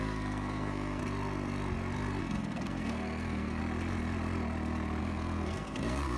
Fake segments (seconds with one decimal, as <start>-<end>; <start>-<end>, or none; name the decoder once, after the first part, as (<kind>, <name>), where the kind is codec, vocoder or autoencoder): 0.0-1.0 (codec, SNAC); 2.2-3.6; 5.0-6.2